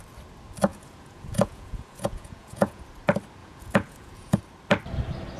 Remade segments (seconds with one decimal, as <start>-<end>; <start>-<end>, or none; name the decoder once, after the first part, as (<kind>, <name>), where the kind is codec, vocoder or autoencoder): 0.7-2.8 (vocoder, Vocos); 3.4-4.4